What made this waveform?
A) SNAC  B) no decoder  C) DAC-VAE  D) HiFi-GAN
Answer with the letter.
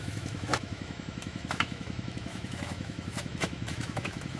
C